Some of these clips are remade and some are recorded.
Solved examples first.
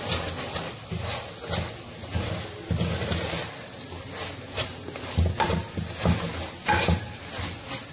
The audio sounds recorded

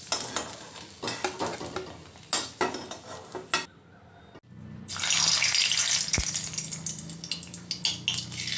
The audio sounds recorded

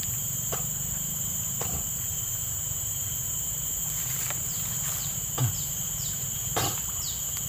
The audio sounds remade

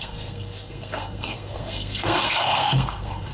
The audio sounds remade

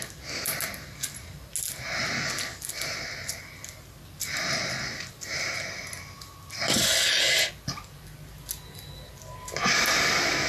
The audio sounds recorded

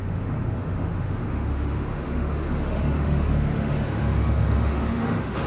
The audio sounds remade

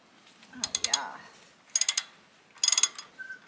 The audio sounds recorded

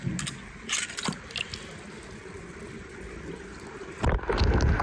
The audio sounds recorded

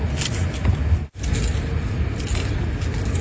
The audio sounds recorded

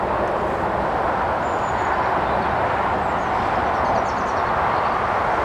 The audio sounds recorded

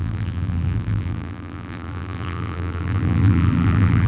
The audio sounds remade